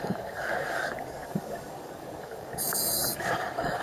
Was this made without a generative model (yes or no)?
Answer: no